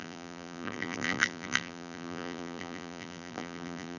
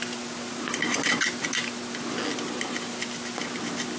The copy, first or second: first